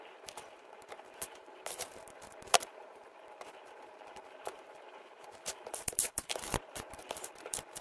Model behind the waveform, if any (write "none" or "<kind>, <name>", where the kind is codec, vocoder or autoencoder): vocoder, BigVGAN v2